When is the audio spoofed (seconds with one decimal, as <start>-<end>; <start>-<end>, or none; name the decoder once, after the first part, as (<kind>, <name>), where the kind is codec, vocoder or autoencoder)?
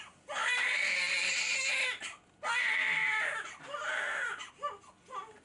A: none